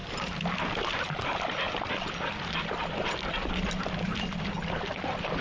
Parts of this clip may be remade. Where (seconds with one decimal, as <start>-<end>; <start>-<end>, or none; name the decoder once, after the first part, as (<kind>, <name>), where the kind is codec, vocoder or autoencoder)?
none